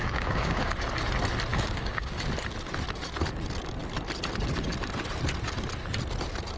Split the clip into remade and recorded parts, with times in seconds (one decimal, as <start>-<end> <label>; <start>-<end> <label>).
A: 0.0-0.7 remade; 0.7-1.5 recorded; 1.5-2.2 remade; 2.2-6.6 recorded